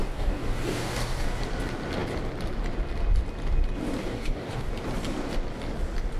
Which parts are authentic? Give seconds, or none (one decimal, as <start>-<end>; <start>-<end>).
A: 1.4-4.0; 4.7-6.2